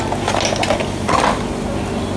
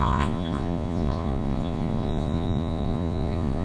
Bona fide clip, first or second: first